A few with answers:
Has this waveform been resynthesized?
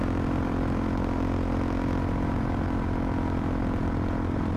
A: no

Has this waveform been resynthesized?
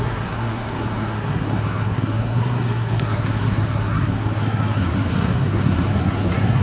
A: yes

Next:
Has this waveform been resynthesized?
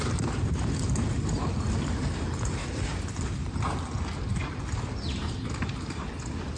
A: no